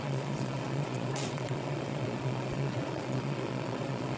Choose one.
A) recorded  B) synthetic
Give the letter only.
B